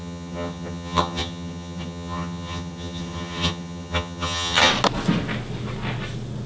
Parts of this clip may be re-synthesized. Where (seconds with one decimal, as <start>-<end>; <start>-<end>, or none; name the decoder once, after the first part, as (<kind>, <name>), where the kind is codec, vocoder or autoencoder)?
0.0-4.7 (vocoder, HiFi-GAN)